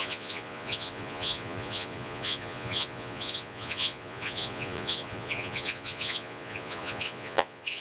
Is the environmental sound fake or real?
fake